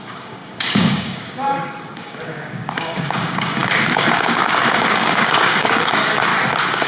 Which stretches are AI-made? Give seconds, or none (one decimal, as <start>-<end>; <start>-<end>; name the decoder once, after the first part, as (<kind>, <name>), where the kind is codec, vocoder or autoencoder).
0.0-6.3 (codec, DAC)